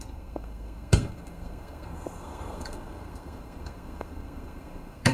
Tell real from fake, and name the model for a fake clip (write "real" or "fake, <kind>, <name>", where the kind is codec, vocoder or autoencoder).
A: fake, codec, SNAC